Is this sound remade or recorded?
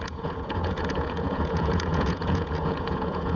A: remade